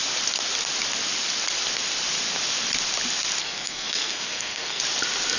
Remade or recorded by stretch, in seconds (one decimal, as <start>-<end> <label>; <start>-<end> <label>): 0.0-3.4 recorded; 3.4-4.8 remade; 4.8-5.4 recorded